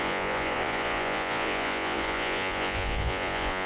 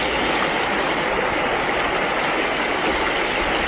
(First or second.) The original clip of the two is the second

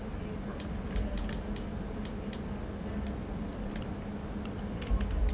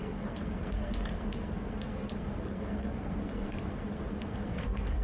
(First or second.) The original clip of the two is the first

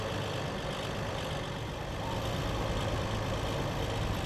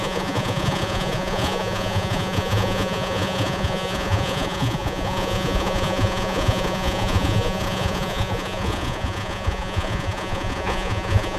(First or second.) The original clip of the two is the first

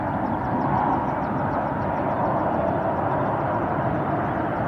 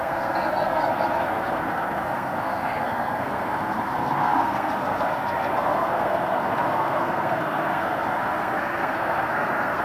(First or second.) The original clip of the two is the first